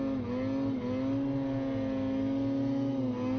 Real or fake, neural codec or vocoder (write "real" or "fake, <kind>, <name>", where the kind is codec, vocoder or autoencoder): real